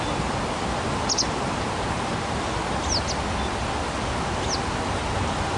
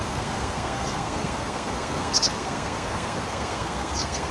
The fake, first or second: second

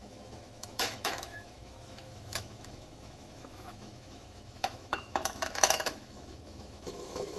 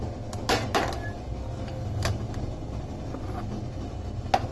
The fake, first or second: first